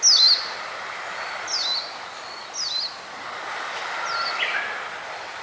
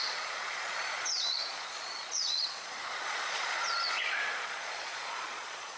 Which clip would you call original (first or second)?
first